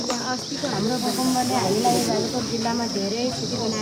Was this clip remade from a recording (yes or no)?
no